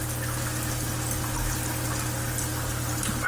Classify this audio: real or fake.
fake